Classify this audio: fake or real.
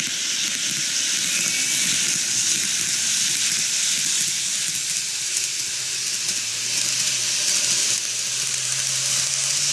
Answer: real